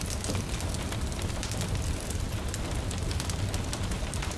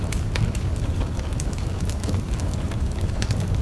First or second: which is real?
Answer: first